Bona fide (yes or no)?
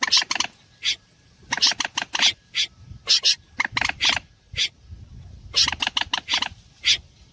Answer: yes